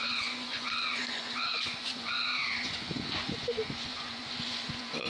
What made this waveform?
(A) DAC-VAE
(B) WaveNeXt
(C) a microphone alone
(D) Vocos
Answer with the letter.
D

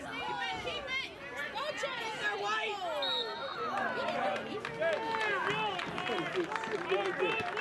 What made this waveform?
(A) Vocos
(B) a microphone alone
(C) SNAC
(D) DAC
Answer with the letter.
B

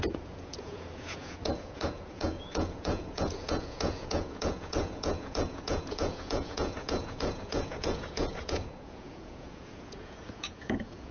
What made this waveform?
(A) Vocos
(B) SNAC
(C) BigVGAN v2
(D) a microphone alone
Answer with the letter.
A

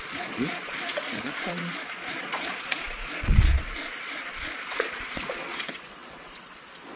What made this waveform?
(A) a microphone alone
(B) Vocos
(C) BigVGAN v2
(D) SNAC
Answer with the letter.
B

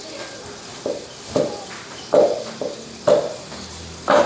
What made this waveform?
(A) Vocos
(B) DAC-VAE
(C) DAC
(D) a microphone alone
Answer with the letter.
D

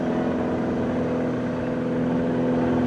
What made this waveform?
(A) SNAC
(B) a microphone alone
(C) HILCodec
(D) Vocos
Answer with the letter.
B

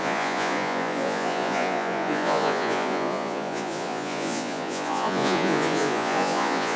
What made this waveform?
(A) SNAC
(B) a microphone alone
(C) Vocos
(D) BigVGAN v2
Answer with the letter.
C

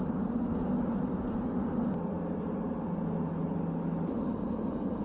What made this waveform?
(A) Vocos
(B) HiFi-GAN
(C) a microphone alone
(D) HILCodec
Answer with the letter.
C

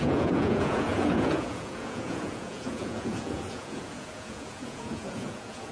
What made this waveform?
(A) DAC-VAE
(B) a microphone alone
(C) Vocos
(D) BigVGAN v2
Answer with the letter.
C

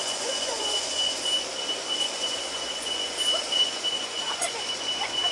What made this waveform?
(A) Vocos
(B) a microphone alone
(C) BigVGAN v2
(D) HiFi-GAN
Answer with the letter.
A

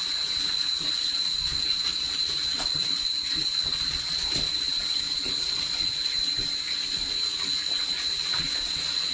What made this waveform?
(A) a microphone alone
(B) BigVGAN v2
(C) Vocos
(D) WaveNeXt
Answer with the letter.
C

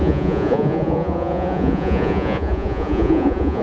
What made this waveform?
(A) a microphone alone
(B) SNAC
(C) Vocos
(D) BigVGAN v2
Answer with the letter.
C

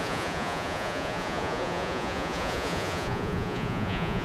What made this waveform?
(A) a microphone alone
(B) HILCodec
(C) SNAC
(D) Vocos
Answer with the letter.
D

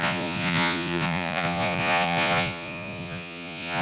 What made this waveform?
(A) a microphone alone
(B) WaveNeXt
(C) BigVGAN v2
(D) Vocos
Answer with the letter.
D